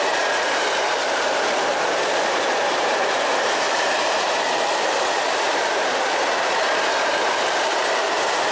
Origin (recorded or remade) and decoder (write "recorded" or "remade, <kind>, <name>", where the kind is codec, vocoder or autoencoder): remade, vocoder, BigVGAN v2